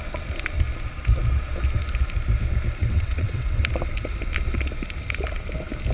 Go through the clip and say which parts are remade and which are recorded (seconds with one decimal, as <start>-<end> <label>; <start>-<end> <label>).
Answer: 0.0-2.8 recorded; 2.8-3.6 remade; 3.6-5.9 recorded

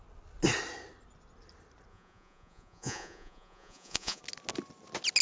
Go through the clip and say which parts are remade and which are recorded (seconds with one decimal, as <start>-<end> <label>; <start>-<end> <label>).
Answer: 0.0-1.9 recorded; 1.9-4.2 remade; 4.2-5.2 recorded

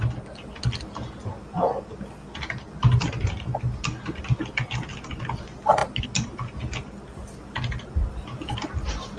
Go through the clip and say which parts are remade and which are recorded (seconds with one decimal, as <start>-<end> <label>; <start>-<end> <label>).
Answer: 0.0-9.2 recorded

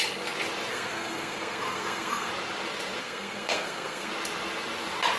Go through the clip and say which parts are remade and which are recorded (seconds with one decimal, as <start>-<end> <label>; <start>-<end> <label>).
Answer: 0.0-0.7 recorded; 0.7-2.3 remade; 2.3-3.0 recorded; 3.0-4.1 remade; 4.1-5.2 recorded

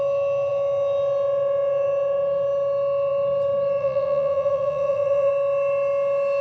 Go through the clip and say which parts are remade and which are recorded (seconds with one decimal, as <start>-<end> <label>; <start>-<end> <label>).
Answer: 0.0-3.8 recorded; 3.8-5.3 remade; 5.3-6.4 recorded